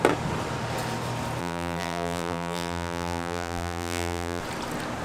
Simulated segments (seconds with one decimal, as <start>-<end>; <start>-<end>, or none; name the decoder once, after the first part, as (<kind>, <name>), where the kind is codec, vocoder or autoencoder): 1.4-4.4 (vocoder, BigVGAN v2)